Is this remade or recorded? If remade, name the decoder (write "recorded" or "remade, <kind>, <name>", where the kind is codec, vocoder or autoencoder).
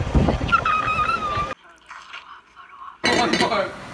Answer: recorded